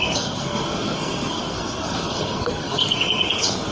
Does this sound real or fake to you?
fake